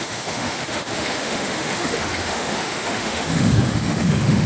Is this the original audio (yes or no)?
no